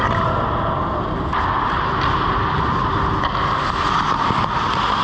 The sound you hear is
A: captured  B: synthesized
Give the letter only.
A